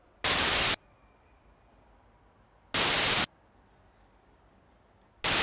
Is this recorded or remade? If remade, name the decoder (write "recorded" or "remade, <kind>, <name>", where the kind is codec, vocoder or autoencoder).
recorded